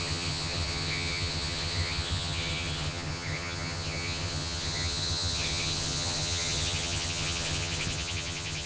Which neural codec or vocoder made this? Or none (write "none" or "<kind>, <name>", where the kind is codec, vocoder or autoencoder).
vocoder, HiFi-GAN